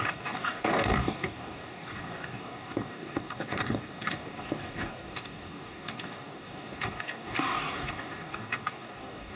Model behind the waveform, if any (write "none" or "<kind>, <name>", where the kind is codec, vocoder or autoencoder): codec, DAC